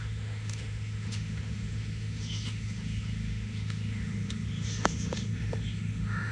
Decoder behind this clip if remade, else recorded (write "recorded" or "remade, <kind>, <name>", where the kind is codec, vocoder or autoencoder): remade, autoencoder, DAC-VAE